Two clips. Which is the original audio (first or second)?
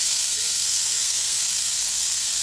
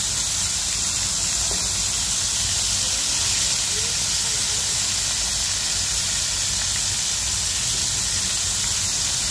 second